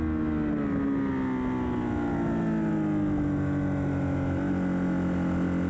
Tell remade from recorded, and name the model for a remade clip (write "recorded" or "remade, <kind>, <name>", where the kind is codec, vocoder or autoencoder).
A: recorded